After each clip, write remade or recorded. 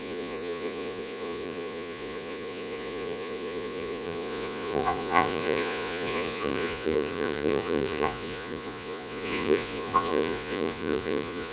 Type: remade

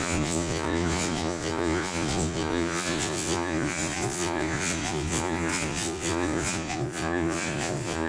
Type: remade